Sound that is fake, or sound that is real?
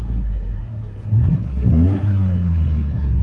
fake